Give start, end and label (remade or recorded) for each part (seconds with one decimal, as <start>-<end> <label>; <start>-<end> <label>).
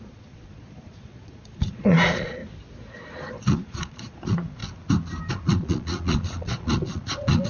0.0-2.4 remade; 2.4-3.3 recorded; 3.3-4.6 remade; 4.6-5.3 recorded; 5.3-7.5 remade